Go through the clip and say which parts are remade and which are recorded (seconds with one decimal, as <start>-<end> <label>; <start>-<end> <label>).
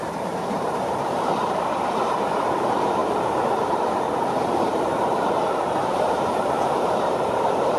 0.0-7.8 remade